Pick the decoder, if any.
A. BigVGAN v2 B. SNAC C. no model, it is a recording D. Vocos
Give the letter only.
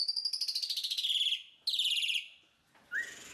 C